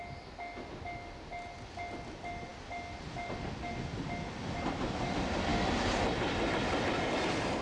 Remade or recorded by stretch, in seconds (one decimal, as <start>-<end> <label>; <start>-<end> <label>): 0.0-7.6 recorded